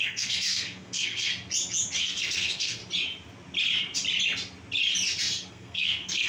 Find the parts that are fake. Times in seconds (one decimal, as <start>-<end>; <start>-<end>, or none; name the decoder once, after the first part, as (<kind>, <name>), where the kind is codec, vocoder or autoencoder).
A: 0.0-1.3 (codec, SNAC); 2.0-2.8; 5.5-6.3